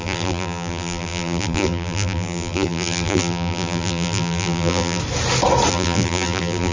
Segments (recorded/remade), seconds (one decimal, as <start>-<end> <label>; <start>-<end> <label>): 0.0-5.0 remade; 5.0-5.7 recorded; 5.7-6.7 remade